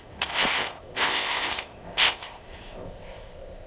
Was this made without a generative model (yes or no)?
no